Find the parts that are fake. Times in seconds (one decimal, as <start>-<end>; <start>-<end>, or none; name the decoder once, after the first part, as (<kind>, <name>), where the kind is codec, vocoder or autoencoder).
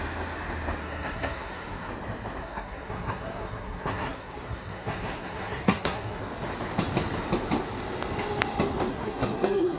0.8-1.9 (codec, SNAC); 2.4-6.2; 8.9-9.8